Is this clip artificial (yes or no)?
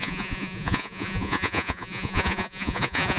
yes